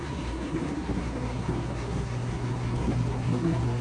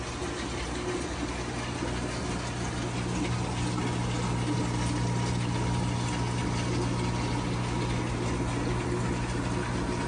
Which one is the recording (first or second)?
second